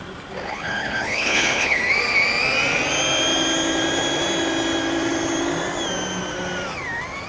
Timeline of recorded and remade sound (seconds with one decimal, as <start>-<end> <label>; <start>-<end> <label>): 0.0-0.4 recorded; 0.4-1.8 remade; 1.8-7.3 recorded